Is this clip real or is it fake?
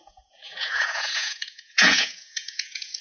fake